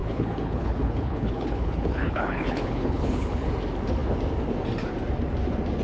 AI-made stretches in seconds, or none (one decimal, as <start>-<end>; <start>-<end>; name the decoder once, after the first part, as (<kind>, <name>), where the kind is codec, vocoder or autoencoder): 0.0-3.5 (codec, HILCodec)